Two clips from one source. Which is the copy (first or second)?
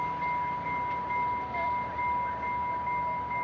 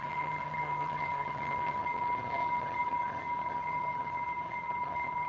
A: second